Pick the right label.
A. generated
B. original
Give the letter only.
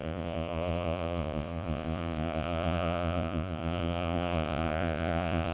A